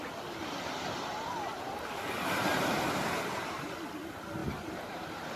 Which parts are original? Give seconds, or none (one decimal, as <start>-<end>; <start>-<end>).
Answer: 0.0-0.4; 3.6-4.4